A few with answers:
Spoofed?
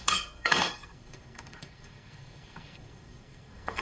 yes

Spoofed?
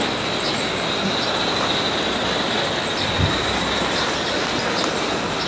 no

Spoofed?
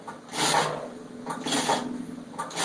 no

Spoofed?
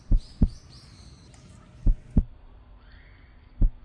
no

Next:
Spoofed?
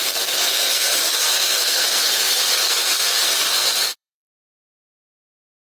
yes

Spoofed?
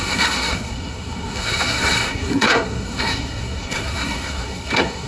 yes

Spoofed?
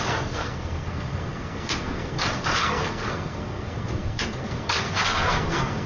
yes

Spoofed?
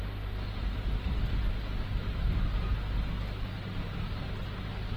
no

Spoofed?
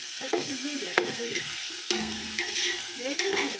yes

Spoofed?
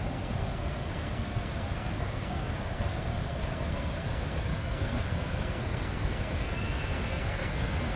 yes